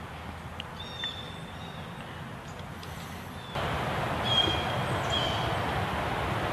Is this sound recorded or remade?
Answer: recorded